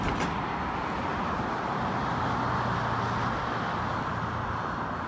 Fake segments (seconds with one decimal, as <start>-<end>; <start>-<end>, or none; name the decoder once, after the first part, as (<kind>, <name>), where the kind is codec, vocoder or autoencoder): 1.1-2.0 (vocoder, BigVGAN v2)